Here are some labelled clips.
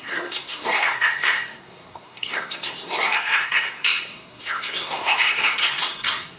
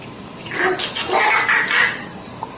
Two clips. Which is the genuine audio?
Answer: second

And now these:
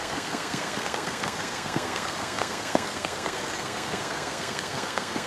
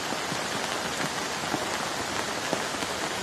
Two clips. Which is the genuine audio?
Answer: second